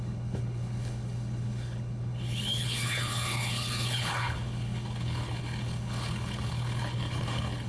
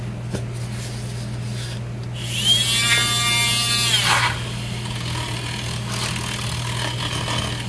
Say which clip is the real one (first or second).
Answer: second